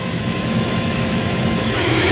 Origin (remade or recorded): remade